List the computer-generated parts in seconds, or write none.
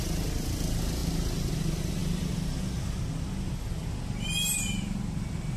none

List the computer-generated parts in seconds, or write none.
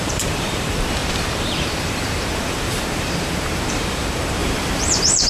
0.0-5.3 (vocoder, BigVGAN v2)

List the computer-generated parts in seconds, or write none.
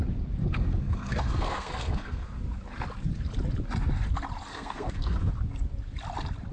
0.4-2.4 (codec, SNAC); 4.5-5.3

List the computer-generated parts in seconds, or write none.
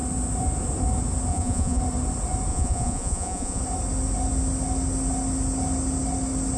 1.3-1.8 (vocoder, Vocos); 2.5-3.6